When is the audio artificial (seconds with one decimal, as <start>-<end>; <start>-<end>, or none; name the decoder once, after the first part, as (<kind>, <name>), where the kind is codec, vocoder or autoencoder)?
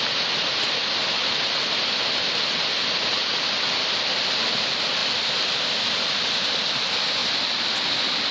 5.0-5.5 (vocoder, BigVGAN v2)